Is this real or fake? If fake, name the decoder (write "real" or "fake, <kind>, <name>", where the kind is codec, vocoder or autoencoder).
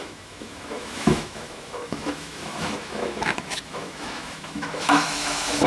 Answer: fake, autoencoder, DAC-VAE